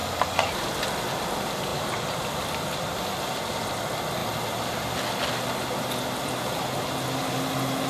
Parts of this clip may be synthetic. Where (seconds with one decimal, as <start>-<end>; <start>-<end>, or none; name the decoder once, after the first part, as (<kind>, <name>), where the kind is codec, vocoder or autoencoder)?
1.7-3.7 (vocoder, BigVGAN v2)